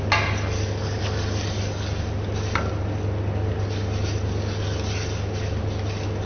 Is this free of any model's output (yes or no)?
yes